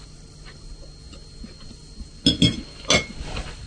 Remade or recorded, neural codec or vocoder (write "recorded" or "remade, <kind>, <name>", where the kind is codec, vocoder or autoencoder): recorded